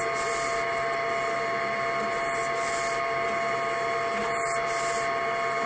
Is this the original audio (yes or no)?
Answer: yes